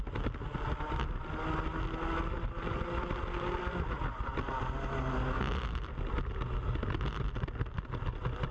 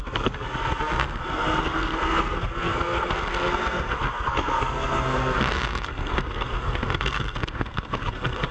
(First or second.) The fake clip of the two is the second